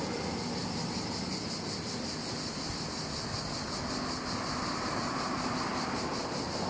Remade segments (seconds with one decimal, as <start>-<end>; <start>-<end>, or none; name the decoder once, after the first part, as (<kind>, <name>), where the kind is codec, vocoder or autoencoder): none